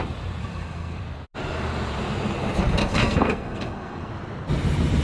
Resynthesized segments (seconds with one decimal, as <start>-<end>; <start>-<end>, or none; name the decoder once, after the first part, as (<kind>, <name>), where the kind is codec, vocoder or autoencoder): 0.4-1.0 (codec, SNAC); 2.8-4.1